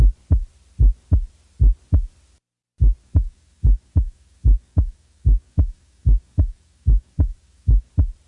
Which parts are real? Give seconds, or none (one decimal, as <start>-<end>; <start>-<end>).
0.0-3.0; 7.9-8.3